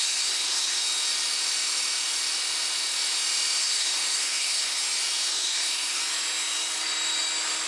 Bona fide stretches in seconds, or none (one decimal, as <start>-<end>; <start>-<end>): 0.8-3.6; 4.8-5.3; 6.0-7.7